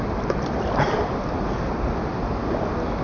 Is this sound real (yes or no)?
yes